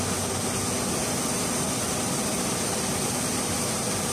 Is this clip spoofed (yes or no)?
no